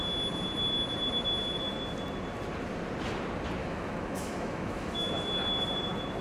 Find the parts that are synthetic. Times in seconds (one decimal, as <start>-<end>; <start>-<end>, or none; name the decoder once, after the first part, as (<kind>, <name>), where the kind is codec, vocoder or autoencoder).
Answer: 3.6-5.1 (autoencoder, DAC-VAE)